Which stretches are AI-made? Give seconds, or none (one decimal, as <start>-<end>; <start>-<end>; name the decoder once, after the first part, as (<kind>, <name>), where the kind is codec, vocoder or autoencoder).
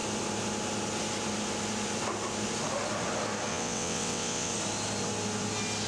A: 3.5-4.5 (vocoder, WaveNeXt)